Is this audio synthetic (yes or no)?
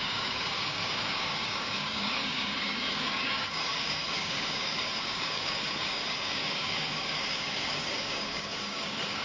yes